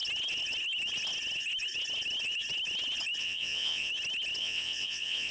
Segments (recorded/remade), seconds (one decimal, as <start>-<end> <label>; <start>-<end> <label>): 0.0-3.2 recorded; 3.2-3.9 remade; 3.9-4.4 recorded; 4.4-5.3 remade